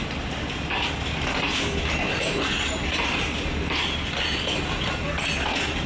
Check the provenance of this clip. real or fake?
real